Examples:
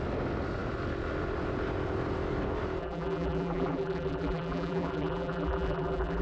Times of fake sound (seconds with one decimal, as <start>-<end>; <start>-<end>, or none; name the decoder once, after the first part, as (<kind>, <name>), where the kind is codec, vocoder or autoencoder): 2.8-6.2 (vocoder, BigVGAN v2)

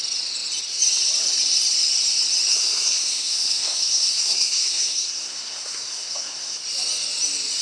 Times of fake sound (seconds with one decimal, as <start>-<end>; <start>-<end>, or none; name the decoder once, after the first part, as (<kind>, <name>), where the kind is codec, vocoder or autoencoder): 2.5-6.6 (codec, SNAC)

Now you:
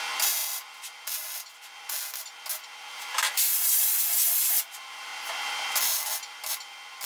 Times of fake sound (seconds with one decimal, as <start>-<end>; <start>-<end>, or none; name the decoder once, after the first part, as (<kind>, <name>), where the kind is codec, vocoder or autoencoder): 2.9-3.6 (vocoder, BigVGAN v2)

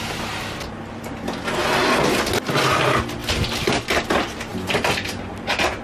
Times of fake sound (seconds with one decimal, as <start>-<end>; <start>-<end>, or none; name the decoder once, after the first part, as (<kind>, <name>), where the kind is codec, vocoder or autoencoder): none

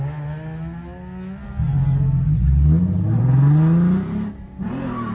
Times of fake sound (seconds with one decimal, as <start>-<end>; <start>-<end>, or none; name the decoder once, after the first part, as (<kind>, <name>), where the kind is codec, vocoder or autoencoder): none

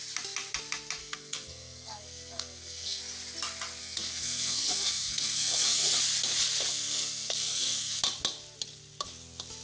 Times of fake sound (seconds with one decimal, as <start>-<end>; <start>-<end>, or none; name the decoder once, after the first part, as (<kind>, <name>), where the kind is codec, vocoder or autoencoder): 1.0-3.0 (codec, SNAC); 3.8-5.9; 6.7-8.0

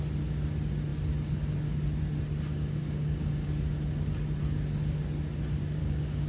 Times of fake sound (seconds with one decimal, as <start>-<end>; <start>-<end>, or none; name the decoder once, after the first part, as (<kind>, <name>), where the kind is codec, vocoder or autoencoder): 2.5-3.5 (codec, DAC); 5.8-6.3